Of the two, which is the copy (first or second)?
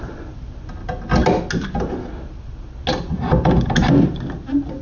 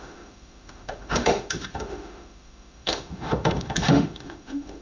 second